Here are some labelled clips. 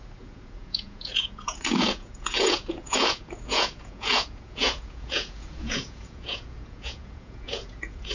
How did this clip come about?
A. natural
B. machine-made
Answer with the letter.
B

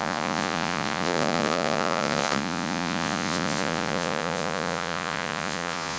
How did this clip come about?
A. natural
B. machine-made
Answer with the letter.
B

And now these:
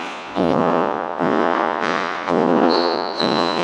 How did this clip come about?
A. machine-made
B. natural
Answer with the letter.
A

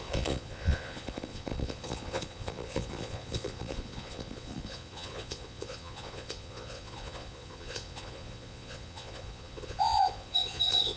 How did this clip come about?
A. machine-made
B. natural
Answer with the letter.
A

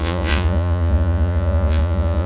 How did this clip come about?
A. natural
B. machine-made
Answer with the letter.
B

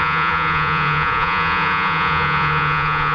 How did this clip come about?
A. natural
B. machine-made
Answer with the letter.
B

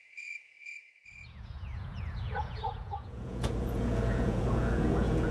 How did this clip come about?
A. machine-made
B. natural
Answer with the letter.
A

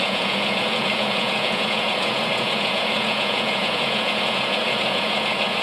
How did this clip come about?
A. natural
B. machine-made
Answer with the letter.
B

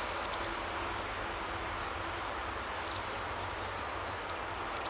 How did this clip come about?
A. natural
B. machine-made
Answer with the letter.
A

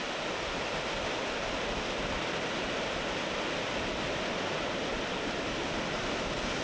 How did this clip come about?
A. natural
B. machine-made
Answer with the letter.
A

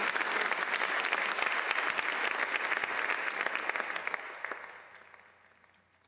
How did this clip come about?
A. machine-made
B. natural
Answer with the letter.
B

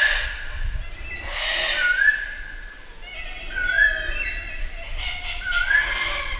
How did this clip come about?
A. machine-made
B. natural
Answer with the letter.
B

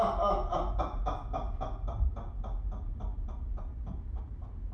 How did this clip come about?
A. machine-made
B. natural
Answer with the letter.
B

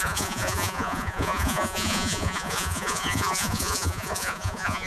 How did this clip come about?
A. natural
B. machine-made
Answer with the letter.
B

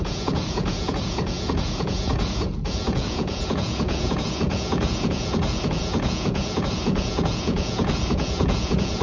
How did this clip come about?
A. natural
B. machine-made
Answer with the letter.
B